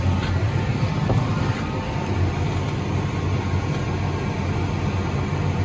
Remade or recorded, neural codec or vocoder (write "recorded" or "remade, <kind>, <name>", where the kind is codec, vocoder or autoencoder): recorded